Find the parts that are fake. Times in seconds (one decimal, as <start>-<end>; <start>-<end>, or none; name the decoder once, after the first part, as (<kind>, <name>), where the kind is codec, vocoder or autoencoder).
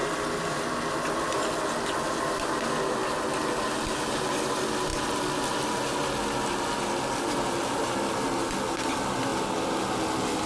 none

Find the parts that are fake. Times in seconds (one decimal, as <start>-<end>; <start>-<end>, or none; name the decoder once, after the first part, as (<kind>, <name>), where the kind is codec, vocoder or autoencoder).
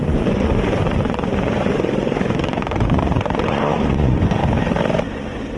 0.0-4.4 (vocoder, Vocos); 5.1-5.6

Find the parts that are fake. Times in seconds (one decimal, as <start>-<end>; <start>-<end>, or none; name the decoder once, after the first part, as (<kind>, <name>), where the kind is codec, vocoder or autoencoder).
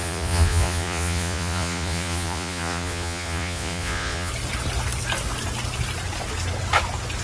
0.0-4.3 (vocoder, Vocos)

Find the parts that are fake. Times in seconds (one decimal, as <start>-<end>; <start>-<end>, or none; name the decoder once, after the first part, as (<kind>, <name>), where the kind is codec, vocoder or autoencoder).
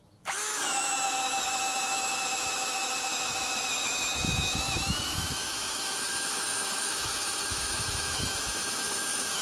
0.0-9.4 (autoencoder, DAC-VAE)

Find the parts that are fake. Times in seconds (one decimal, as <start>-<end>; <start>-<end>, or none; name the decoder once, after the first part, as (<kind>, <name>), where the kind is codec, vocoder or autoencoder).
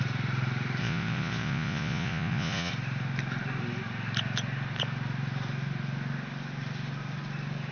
0.8-2.7 (vocoder, Vocos)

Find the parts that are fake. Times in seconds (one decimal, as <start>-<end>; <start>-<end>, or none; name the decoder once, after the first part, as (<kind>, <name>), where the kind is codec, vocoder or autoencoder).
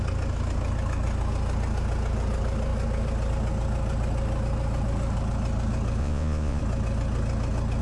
6.0-6.6 (vocoder, Vocos)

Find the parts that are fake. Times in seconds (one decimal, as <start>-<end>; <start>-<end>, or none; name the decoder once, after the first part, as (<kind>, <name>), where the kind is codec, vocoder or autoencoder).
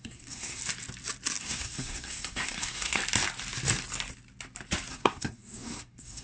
0.0-0.6 (codec, SNAC); 1.4-3.0; 4.9-6.2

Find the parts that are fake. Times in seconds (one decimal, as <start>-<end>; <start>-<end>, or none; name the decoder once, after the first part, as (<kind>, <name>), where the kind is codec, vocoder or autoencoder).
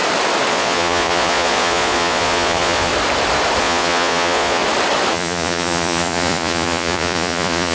0.5-2.9 (vocoder, Vocos); 3.6-4.6; 5.1-7.7